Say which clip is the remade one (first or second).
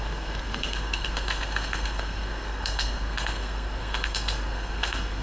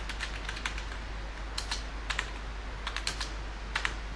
first